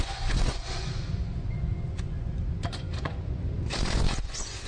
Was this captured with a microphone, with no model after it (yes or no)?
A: no